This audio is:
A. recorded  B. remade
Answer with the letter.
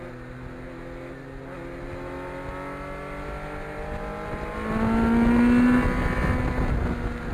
A